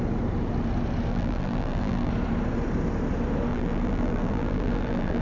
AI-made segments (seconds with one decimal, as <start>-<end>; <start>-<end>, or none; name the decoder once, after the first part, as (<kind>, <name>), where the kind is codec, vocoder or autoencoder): 1.1-2.1 (vocoder, BigVGAN v2); 3.5-5.2